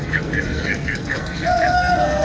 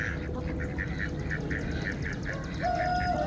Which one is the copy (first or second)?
first